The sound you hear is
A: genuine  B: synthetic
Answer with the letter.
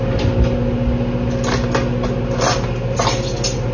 A